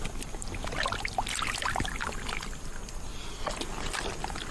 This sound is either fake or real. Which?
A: real